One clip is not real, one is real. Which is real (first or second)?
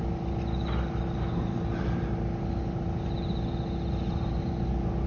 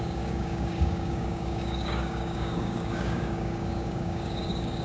first